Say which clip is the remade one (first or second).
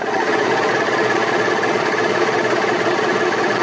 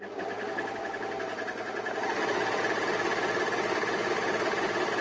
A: first